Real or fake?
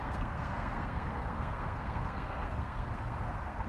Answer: fake